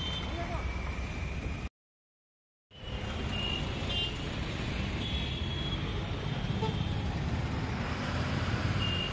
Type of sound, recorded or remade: recorded